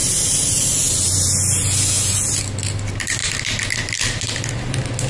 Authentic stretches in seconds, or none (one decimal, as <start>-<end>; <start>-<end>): 0.9-5.1